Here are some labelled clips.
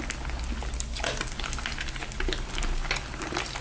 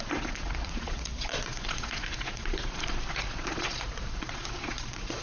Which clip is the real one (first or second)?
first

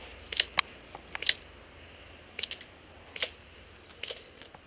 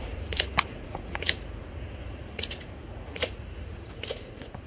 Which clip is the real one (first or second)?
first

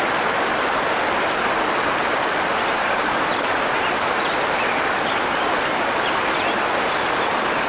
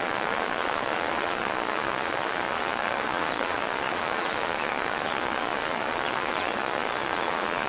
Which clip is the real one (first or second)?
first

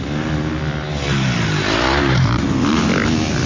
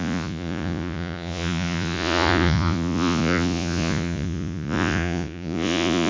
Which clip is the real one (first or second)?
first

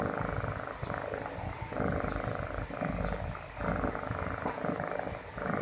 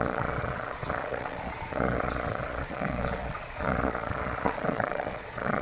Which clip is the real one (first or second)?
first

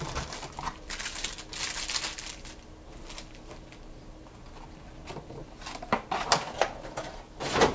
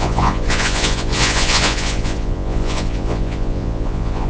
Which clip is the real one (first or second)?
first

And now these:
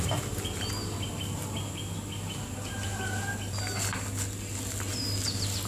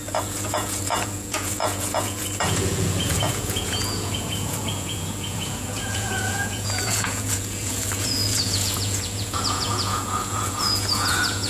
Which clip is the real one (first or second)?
first